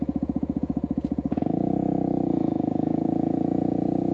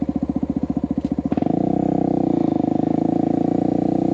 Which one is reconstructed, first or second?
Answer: first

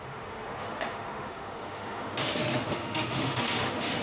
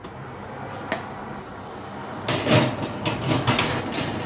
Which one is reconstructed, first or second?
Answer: first